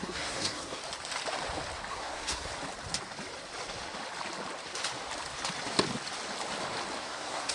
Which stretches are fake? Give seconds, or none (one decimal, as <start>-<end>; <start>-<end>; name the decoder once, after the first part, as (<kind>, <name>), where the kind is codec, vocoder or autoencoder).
0.0-0.8 (codec, SNAC); 1.9-2.5; 7.0-7.5